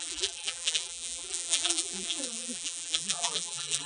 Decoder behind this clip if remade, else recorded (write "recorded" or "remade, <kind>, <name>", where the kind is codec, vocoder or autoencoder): remade, vocoder, BigVGAN v2